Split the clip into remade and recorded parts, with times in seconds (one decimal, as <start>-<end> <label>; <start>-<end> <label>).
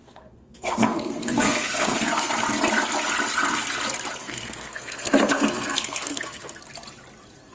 0.0-2.3 remade; 2.3-4.2 recorded; 4.2-6.6 remade; 6.6-7.5 recorded